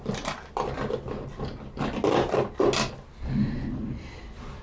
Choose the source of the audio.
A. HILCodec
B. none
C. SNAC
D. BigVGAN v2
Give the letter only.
B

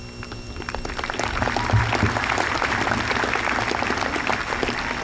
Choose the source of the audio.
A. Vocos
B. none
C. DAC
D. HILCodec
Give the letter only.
B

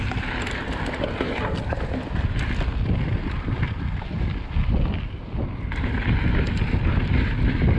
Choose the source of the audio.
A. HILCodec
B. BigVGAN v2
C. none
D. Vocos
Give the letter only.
C